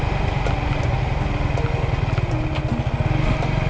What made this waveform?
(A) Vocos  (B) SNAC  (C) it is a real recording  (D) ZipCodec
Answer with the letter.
C